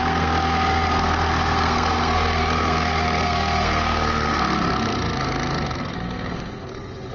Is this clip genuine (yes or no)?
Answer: no